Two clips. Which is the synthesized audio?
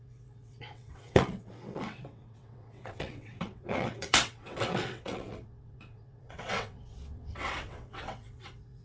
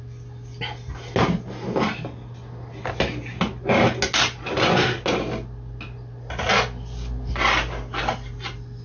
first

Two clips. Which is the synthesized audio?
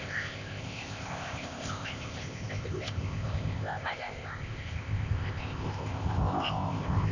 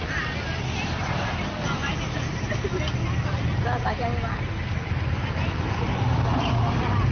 first